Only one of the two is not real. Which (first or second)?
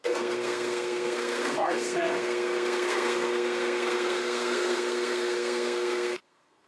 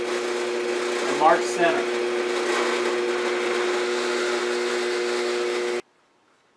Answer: first